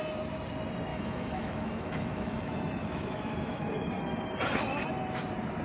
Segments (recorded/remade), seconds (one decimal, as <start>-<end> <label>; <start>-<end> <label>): 0.0-0.9 recorded; 0.9-3.9 remade; 3.9-5.6 recorded